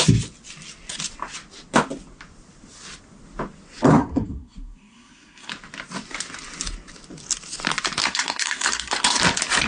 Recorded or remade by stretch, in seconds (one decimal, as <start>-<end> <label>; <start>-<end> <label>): 0.0-3.9 recorded; 3.9-5.5 remade; 5.5-8.0 recorded; 8.0-9.2 remade; 9.2-9.7 recorded